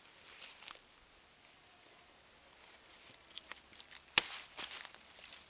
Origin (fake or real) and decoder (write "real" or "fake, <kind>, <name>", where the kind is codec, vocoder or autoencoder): real